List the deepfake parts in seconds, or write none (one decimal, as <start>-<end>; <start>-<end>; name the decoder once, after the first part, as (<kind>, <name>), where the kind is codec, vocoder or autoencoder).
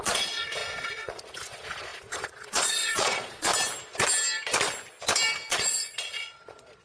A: 0.0-3.5 (vocoder, Vocos); 5.5-6.8